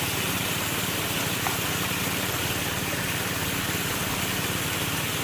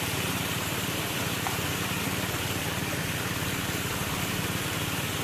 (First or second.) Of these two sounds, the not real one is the second